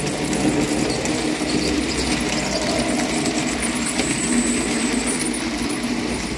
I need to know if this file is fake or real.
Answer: real